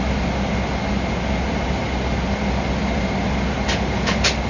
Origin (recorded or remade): recorded